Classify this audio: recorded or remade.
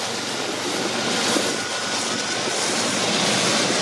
recorded